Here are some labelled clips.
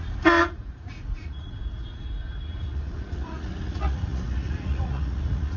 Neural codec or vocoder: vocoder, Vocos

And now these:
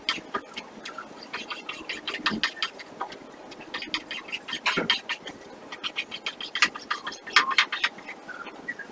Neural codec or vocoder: none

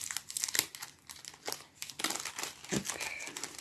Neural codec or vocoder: none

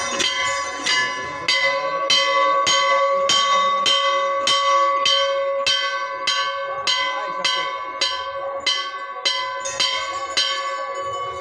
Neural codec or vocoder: none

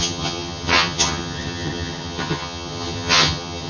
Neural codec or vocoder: vocoder, HiFi-GAN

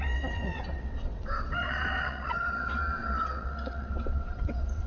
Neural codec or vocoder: vocoder, WaveNeXt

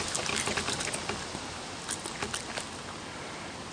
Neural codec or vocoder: none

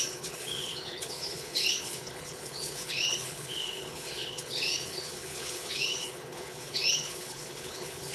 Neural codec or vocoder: codec, HILCodec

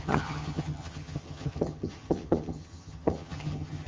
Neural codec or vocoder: vocoder, HiFi-GAN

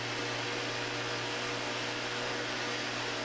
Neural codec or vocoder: none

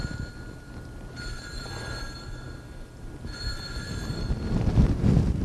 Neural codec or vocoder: vocoder, BigVGAN v2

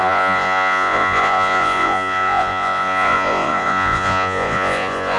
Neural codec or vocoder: vocoder, Vocos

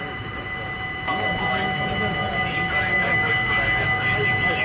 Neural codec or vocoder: none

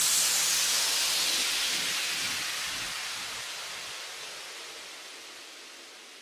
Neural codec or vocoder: none